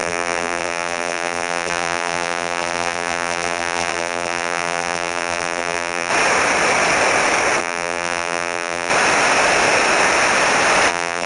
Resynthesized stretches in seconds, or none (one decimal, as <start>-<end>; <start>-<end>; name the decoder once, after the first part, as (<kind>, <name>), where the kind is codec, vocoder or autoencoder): 0.0-6.1 (vocoder, BigVGAN v2); 7.6-8.9; 10.9-11.3